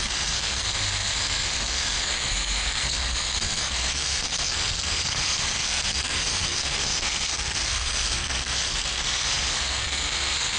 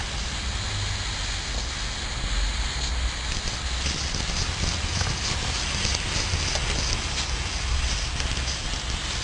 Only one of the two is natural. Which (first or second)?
second